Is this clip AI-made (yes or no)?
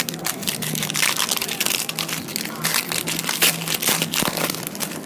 no